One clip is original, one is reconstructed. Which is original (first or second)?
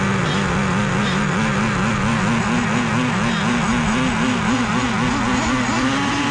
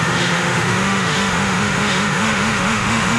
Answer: first